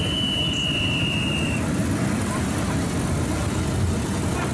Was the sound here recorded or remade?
recorded